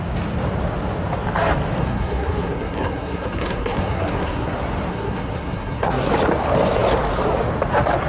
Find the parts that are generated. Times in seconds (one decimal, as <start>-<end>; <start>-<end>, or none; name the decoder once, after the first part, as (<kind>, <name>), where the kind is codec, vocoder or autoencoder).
1.8-4.5 (codec, SNAC); 4.9-6.1

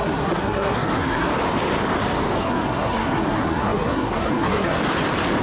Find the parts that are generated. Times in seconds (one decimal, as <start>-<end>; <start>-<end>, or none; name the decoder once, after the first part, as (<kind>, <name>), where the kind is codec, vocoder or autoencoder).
0.0-1.3 (codec, SNAC); 2.4-4.8

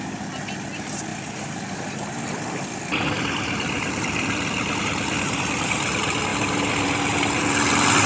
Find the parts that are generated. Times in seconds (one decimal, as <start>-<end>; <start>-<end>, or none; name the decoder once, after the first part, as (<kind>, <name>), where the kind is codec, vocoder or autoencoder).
1.1-4.8 (vocoder, BigVGAN v2); 6.3-7.4

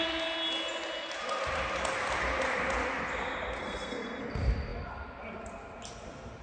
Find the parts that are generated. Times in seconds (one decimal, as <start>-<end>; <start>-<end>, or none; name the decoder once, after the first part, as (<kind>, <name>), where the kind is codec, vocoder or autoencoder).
3.6-4.2 (codec, SNAC)

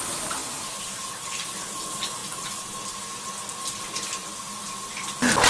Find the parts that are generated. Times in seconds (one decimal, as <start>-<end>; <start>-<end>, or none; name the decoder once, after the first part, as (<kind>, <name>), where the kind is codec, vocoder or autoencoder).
none

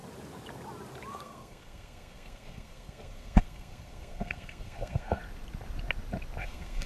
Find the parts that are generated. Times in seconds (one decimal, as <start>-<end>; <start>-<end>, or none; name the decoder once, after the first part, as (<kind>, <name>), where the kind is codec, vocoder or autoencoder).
1.1-5.2 (codec, SNAC); 6.4-6.9

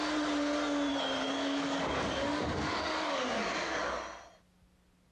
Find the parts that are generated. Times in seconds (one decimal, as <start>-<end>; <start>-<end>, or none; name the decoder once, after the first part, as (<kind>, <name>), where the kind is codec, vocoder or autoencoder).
0.9-4.0 (codec, DAC)